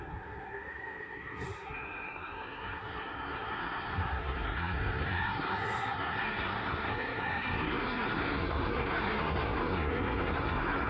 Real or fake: fake